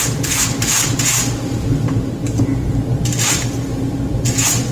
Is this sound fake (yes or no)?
yes